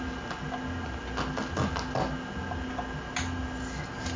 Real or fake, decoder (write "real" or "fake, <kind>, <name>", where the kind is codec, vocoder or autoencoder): real